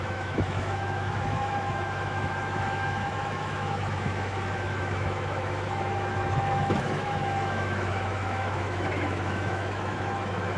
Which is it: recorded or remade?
remade